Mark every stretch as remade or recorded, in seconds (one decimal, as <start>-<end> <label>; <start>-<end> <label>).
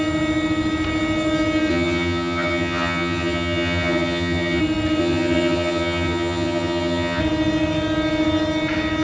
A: 0.0-1.7 recorded; 1.7-4.6 remade; 4.6-5.0 recorded; 5.0-7.2 remade; 7.2-9.0 recorded